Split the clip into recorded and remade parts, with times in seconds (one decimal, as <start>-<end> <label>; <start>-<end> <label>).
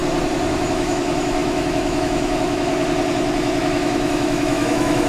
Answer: 0.0-0.7 recorded; 0.7-2.7 remade; 2.7-3.6 recorded; 3.6-5.1 remade